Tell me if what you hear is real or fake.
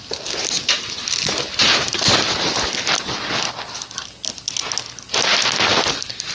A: real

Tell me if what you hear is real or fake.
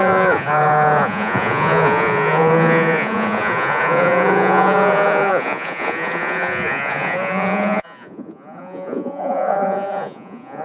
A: fake